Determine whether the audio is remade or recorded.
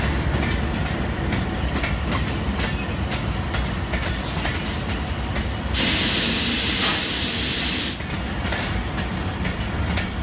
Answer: recorded